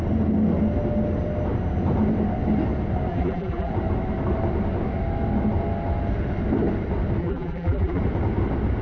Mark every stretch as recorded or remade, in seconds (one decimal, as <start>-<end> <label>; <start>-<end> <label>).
0.0-3.1 recorded; 3.1-3.7 remade; 3.7-7.2 recorded; 7.2-8.0 remade; 8.0-8.8 recorded